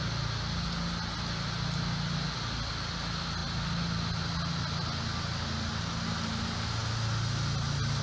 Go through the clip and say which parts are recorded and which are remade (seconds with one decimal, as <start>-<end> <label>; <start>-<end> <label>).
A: 0.0-8.0 recorded